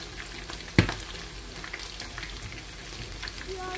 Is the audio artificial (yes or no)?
no